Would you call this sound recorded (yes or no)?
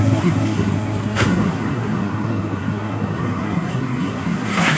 no